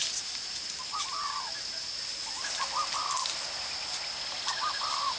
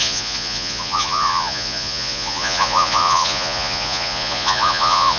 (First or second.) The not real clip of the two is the second